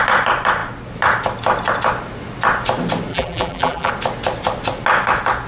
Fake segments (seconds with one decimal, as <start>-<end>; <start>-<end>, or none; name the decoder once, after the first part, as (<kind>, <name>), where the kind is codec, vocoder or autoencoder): 3.1-3.9 (vocoder, BigVGAN v2)